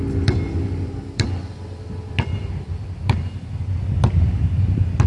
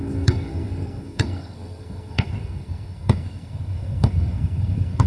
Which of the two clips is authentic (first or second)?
first